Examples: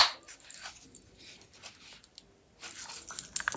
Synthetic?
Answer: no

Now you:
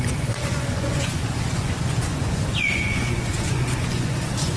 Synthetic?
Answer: yes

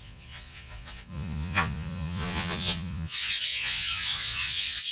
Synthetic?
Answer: yes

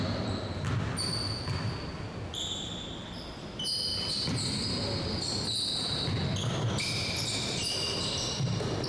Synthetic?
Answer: no